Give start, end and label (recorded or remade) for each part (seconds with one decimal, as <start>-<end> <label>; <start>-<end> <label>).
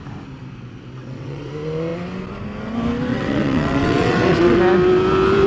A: 0.0-1.0 recorded; 1.0-1.5 remade; 1.5-3.1 recorded; 3.1-4.6 remade; 4.6-5.5 recorded